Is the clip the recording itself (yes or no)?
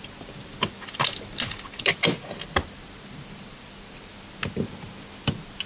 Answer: yes